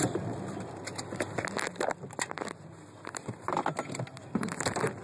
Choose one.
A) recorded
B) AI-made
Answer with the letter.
A